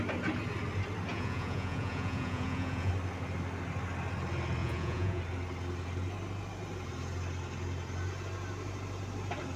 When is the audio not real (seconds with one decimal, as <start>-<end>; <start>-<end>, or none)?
1.1-2.9; 4.6-5.2